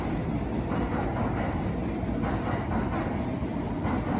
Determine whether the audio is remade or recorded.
recorded